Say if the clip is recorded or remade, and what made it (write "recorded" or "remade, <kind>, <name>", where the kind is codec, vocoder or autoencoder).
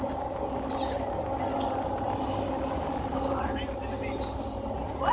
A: recorded